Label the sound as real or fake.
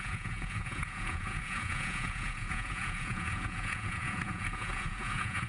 fake